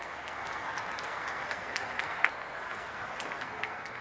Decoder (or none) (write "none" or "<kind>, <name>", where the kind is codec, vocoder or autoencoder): codec, SNAC